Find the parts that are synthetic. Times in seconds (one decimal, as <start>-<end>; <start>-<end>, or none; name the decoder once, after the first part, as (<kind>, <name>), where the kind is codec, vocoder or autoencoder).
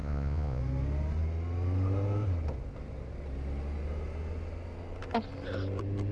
0.0-0.6 (vocoder, Vocos)